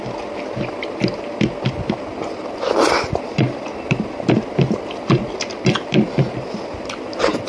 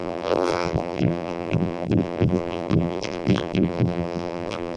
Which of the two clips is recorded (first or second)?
first